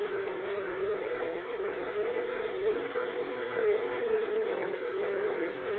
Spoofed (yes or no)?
yes